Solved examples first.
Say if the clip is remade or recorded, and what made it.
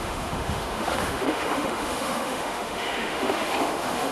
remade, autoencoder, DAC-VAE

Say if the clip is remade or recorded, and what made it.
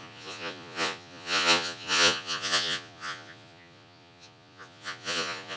remade, vocoder, Vocos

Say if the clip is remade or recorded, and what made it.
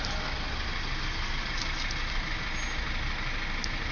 recorded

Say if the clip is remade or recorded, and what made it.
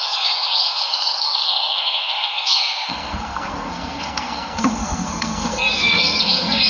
remade, codec, SNAC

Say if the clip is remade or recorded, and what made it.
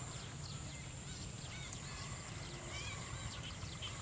recorded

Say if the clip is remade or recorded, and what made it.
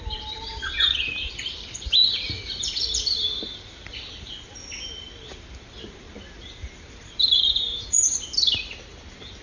remade, vocoder, BigVGAN v2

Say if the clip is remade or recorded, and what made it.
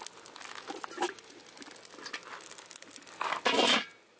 recorded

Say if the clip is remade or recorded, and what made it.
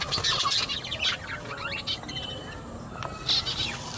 recorded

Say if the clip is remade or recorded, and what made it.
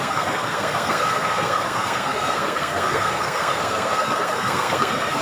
remade, codec, SNAC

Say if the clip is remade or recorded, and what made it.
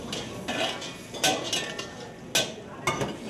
recorded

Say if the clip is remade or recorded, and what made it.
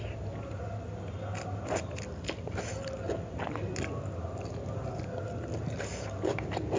recorded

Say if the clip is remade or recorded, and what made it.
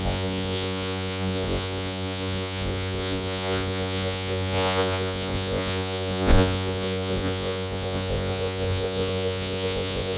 remade, vocoder, Vocos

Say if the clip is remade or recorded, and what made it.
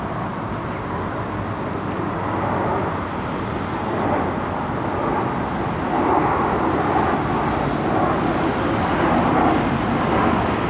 recorded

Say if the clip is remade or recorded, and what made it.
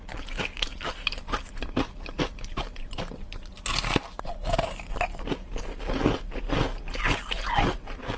recorded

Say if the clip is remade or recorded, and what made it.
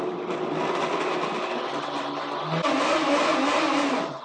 recorded